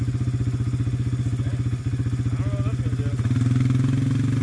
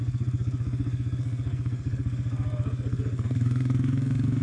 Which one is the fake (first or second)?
second